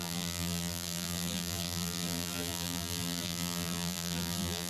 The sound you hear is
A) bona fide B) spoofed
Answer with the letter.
B